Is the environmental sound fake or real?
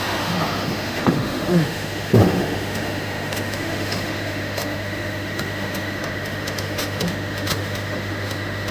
fake